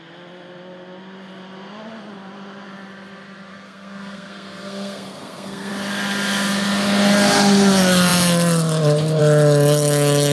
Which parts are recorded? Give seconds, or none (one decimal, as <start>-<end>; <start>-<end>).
0.0-3.5; 5.7-10.3